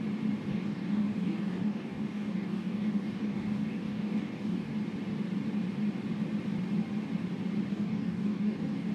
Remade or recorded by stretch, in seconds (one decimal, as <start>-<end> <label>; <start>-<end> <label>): 0.0-0.5 recorded; 0.5-4.7 remade; 4.7-7.7 recorded; 7.7-8.9 remade

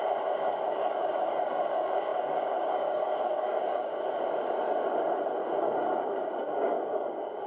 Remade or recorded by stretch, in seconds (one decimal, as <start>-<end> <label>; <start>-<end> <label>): 0.0-3.9 remade; 3.9-5.6 recorded; 5.6-7.5 remade

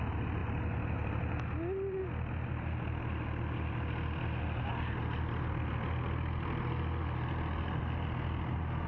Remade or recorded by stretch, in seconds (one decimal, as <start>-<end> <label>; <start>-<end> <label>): 0.0-8.9 recorded